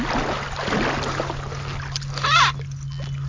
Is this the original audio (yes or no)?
yes